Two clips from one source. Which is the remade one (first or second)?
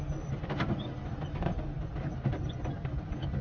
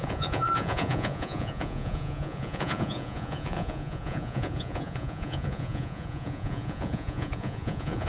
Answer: second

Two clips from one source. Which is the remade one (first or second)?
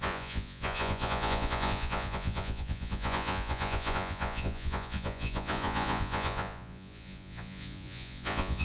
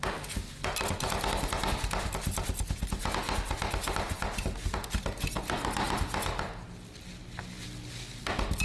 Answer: first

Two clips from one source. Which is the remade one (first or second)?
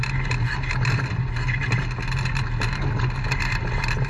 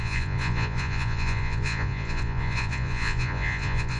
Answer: second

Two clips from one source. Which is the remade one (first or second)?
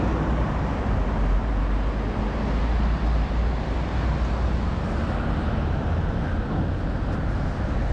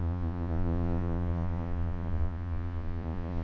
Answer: second